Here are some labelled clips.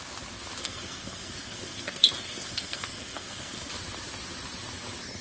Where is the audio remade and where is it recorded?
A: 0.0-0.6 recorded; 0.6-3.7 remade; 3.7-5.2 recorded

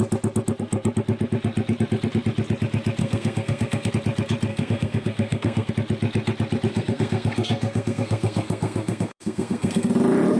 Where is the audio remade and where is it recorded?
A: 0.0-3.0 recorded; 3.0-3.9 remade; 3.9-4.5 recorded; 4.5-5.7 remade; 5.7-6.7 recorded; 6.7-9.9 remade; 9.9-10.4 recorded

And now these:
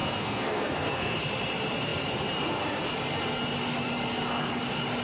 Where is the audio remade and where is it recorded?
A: 0.0-1.2 remade; 1.2-5.0 recorded

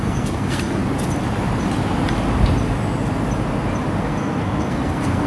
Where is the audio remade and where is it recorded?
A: 0.0-0.8 remade; 0.8-4.0 recorded; 4.0-5.3 remade